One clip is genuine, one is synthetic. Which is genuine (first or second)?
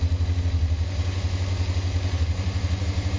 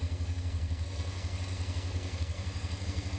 first